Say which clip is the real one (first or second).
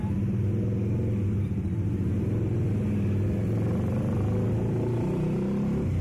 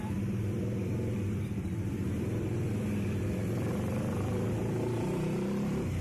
first